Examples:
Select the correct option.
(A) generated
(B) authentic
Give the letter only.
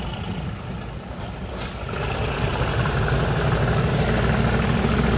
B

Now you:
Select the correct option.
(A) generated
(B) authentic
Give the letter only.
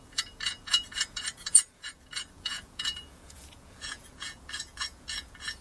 A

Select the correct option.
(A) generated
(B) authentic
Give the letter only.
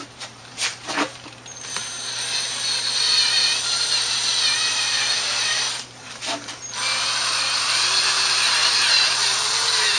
A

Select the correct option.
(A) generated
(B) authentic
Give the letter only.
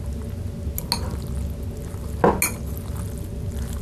B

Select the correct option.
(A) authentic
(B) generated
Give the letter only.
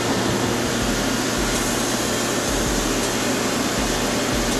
A